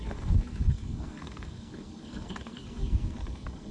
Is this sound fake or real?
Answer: fake